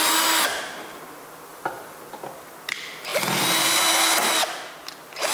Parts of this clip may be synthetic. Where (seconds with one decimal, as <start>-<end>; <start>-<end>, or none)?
1.5-2.0